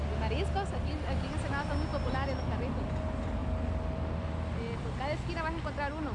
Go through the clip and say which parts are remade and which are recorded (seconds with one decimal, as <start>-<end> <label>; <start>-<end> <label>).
0.0-6.1 recorded